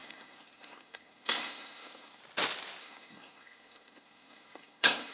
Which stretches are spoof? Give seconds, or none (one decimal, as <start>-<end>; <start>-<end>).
0.0-2.2; 2.8-5.1